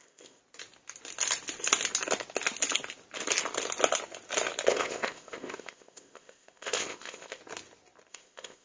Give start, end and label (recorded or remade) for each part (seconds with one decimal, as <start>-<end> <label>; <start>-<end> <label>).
0.0-0.4 remade; 0.4-4.7 recorded; 4.7-7.4 remade; 7.4-8.1 recorded; 8.1-8.6 remade